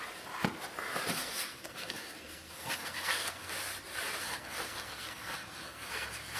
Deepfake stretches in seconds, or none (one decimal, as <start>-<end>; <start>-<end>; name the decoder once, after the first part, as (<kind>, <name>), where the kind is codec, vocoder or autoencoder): 1.1-3.5 (codec, SNAC); 4.2-6.4